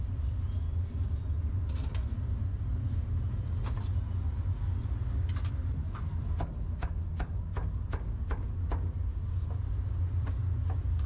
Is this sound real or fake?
real